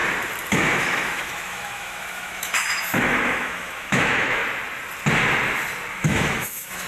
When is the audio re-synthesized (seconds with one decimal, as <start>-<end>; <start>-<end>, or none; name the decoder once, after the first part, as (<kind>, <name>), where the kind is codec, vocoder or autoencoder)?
0.5-4.4 (autoencoder, DAC-VAE); 5.9-6.9